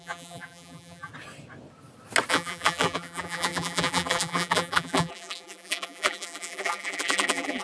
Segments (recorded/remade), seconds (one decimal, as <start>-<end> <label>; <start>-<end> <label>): 0.0-1.1 remade; 1.1-2.3 recorded; 2.3-7.6 remade